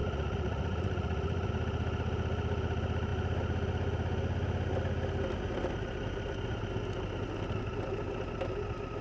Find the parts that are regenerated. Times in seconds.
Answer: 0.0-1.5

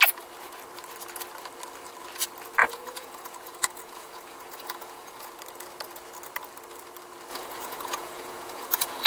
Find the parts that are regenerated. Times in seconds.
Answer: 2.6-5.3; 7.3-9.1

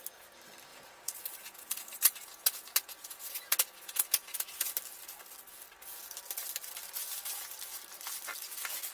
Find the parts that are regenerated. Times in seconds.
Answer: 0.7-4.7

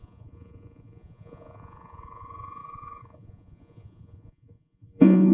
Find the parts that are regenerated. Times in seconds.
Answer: 0.0-5.3